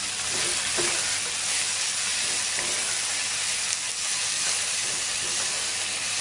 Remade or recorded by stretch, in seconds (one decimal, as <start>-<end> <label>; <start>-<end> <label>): 0.0-6.2 recorded